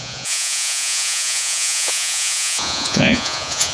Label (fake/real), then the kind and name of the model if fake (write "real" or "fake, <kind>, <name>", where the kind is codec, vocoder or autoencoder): fake, vocoder, Vocos